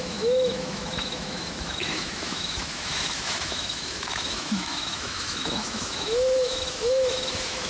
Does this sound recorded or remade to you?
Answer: remade